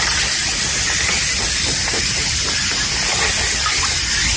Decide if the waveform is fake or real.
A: real